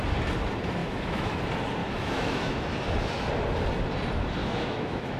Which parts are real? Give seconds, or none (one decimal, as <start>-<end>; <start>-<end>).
0.0-0.8; 1.3-1.8; 2.7-4.4